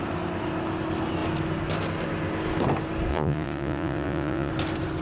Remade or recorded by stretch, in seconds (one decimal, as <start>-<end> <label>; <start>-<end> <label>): 0.0-3.1 recorded; 3.1-4.5 remade; 4.5-5.0 recorded